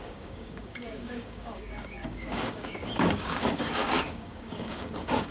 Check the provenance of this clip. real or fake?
fake